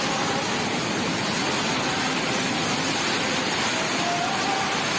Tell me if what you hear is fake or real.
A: real